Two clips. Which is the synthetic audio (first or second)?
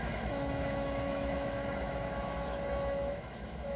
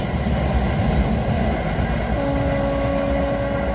first